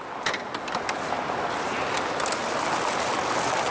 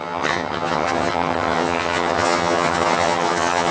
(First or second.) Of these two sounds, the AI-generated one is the second